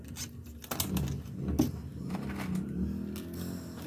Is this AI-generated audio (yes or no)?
no